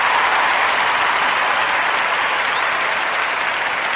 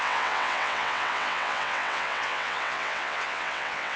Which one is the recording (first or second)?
first